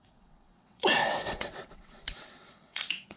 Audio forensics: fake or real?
fake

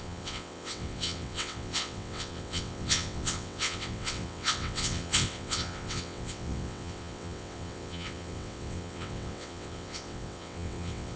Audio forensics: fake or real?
fake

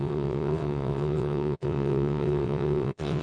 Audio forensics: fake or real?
fake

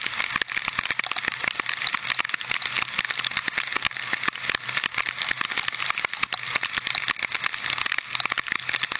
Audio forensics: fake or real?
real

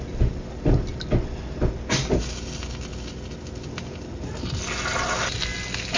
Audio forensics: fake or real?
real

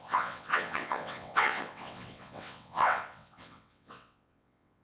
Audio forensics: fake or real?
fake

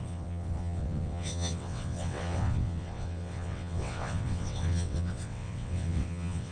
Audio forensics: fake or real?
fake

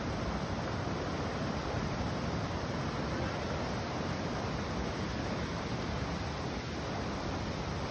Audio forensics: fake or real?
real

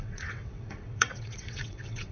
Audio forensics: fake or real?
fake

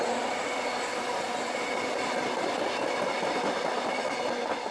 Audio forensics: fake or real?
real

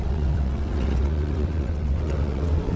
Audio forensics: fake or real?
fake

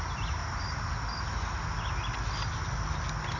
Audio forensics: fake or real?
real